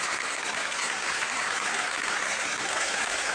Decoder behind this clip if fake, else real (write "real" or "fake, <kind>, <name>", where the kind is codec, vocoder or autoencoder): fake, codec, SNAC